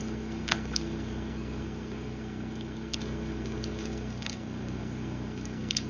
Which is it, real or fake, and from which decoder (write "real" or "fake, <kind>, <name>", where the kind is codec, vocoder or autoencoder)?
fake, codec, SNAC